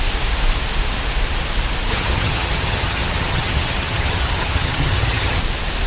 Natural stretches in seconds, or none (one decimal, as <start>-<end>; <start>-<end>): 0.0-1.9; 5.4-5.9